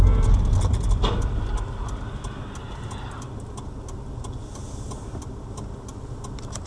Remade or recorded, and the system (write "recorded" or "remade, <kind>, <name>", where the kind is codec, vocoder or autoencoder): recorded